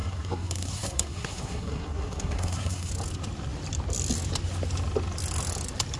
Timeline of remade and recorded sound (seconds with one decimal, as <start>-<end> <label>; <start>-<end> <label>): 0.0-2.9 remade; 2.9-6.0 recorded